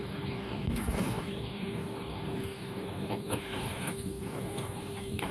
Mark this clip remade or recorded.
remade